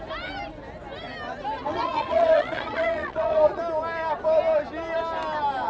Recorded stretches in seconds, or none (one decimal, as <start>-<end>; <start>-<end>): 0.0-1.7; 3.6-5.7